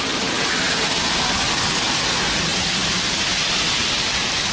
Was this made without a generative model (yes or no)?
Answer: yes